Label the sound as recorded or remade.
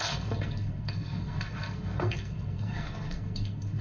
remade